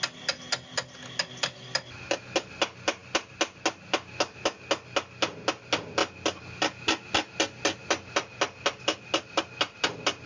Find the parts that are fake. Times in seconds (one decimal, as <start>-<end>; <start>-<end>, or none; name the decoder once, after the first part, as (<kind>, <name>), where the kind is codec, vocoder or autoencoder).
none

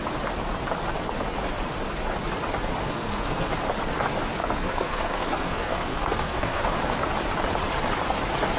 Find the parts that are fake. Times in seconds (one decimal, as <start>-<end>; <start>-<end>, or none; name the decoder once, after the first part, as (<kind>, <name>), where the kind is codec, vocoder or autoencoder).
2.8-3.5 (codec, SNAC); 4.4-6.6

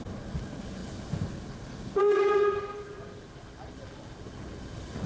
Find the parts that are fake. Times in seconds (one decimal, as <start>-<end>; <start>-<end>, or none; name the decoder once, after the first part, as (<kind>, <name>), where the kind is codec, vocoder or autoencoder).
none

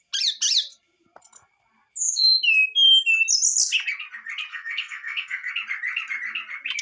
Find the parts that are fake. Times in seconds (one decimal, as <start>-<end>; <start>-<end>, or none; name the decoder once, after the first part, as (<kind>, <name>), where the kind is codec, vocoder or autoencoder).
4.5-5.5 (codec, SNAC)

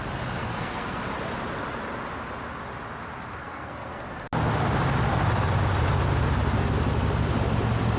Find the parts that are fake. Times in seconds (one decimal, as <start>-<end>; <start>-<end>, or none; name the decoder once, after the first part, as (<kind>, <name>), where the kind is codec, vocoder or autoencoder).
0.4-1.0 (codec, SNAC); 3.4-4.0

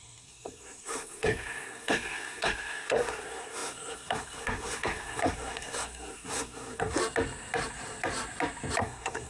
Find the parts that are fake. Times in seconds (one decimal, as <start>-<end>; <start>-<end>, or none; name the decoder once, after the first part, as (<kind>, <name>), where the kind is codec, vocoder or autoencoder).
0.0-7.0 (codec, SNAC); 8.8-9.3

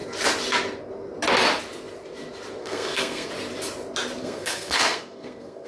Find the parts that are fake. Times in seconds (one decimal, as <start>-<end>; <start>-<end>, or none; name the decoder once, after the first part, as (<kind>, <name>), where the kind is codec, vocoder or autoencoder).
2.6-3.3 (codec, SNAC); 4.2-5.7

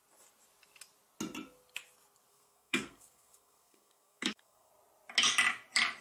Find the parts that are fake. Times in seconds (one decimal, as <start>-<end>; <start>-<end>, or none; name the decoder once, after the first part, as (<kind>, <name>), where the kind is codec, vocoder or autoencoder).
2.3-4.7 (codec, SNAC)